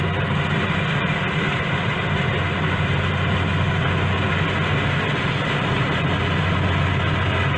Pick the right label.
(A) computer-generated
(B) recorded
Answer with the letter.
B